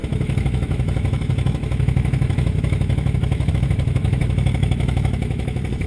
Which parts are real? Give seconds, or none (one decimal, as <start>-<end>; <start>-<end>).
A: none